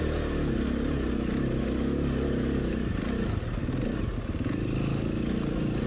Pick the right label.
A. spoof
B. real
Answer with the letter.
B